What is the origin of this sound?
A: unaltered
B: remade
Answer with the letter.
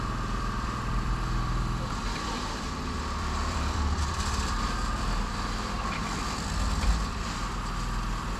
B